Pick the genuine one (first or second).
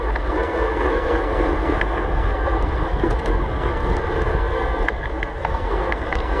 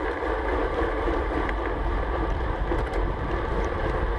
second